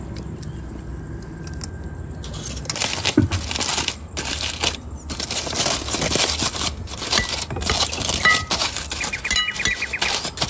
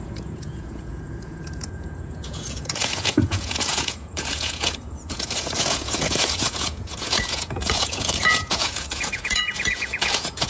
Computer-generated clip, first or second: second